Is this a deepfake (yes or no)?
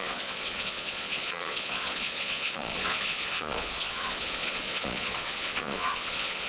yes